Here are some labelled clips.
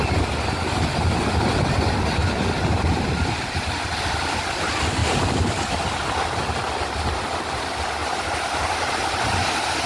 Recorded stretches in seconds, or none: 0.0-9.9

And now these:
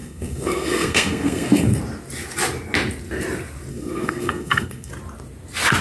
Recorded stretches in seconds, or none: 1.8-3.7; 4.9-5.8

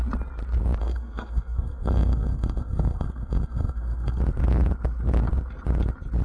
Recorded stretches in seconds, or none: 0.0-0.8; 4.2-6.2

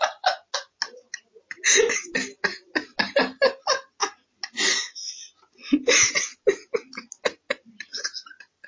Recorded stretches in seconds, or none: 0.0-8.7

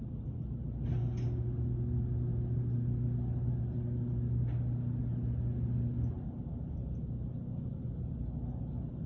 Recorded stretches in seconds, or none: 0.0-9.1